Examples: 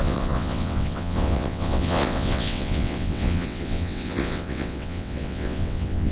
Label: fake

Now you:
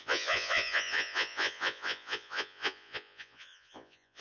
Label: fake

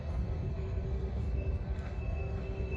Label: fake